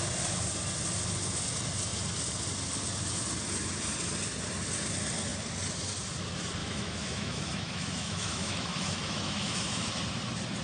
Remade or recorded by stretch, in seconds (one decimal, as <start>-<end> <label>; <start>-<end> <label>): 0.0-6.6 recorded; 6.6-10.0 remade; 10.0-10.6 recorded